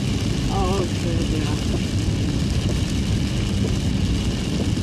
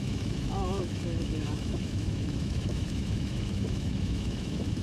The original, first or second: first